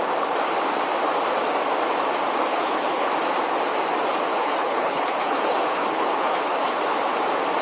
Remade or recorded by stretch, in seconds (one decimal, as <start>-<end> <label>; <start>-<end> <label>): 0.0-2.5 recorded; 2.5-3.1 remade; 3.1-4.3 recorded; 4.3-6.8 remade; 6.8-7.6 recorded